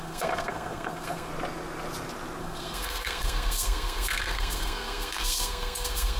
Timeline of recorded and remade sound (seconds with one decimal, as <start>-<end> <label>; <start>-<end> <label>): 0.0-1.3 remade; 1.3-2.4 recorded; 2.4-6.2 remade